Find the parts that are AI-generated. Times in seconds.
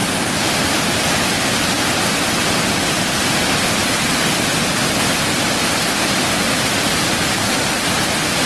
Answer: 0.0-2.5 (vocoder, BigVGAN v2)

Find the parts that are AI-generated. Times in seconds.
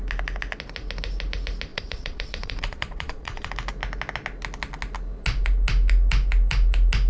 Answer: 1.7-3.5 (vocoder, Vocos)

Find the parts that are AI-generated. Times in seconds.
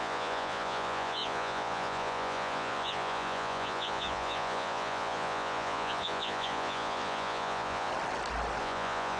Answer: 0.0-7.9 (vocoder, Vocos); 8.6-9.2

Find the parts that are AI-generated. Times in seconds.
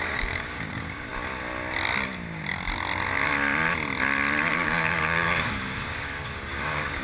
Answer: 0.0-1.1 (codec, DAC); 4.5-7.0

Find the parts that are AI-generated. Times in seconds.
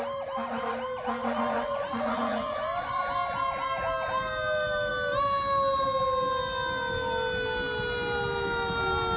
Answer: 1.2-3.0 (vocoder, Vocos)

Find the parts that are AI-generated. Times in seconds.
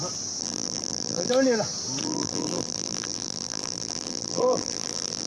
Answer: 0.4-1.3 (vocoder, BigVGAN v2); 2.0-5.3